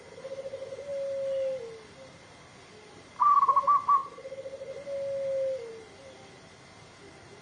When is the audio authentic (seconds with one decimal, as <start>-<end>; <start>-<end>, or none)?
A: 0.0-7.4